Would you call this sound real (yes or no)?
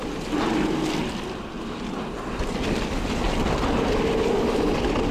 yes